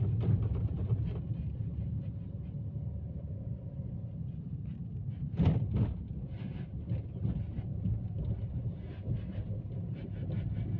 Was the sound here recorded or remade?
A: recorded